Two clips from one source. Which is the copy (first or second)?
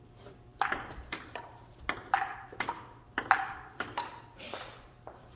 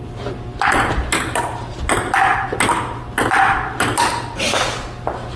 first